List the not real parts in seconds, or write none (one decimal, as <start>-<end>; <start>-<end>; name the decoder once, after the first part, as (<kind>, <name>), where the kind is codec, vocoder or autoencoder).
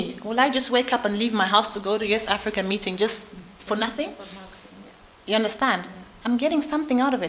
0.0-6.6 (vocoder, Vocos)